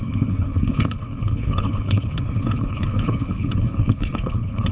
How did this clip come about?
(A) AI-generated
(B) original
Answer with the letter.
A